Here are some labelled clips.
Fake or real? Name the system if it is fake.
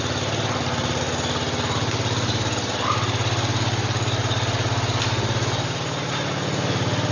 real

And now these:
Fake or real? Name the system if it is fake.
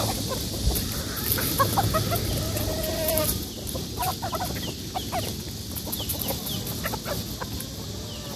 real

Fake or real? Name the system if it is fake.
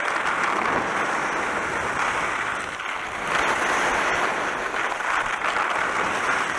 real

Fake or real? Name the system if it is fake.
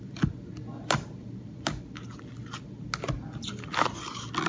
real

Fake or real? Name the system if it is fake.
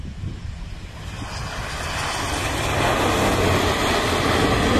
real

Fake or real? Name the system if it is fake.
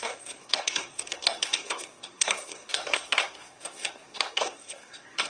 fake, codec, SNAC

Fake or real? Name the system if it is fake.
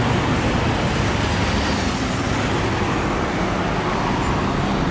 real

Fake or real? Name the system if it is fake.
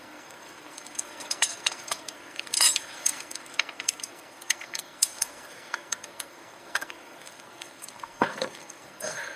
fake, codec, SNAC